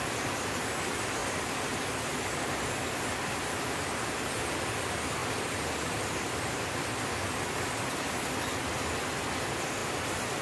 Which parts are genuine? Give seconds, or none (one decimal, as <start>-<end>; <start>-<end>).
0.0-5.2; 6.1-9.8